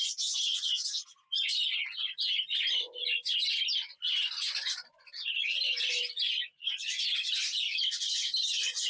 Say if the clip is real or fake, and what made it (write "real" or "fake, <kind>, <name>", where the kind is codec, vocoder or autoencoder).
real